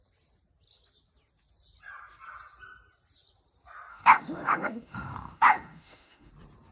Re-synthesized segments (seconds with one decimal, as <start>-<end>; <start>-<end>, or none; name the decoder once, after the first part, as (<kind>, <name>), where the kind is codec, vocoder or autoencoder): 3.9-6.3 (autoencoder, DAC-VAE)